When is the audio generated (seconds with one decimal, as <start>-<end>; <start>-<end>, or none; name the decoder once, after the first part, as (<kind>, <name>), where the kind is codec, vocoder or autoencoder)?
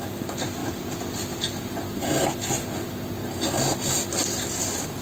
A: 0.0-0.6 (vocoder, BigVGAN v2); 3.6-5.0